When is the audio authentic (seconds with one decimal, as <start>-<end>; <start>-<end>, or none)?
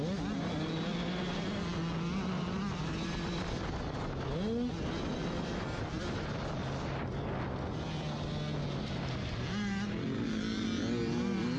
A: 0.0-11.6